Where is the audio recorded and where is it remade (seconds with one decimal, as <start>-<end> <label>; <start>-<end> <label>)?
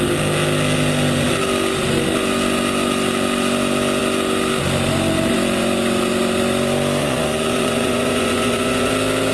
0.0-7.0 recorded; 7.0-8.9 remade; 8.9-9.3 recorded